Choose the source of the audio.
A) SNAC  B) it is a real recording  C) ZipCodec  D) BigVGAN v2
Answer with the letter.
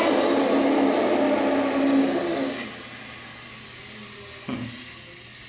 B